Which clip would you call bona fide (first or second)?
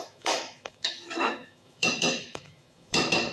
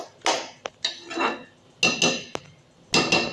second